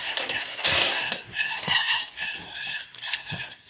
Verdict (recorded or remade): remade